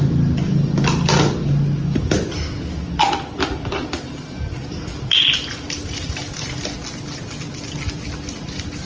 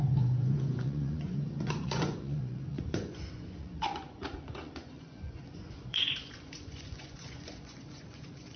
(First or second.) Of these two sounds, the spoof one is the second